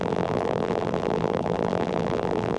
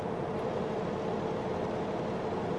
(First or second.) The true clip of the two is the second